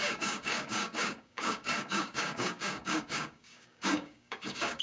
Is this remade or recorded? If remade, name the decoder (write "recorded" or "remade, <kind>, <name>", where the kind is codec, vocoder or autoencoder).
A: remade, codec, DAC